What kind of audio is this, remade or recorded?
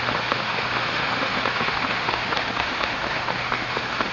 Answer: remade